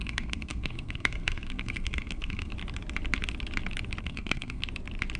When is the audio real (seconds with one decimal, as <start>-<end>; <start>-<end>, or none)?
2.5-4.0; 4.6-5.2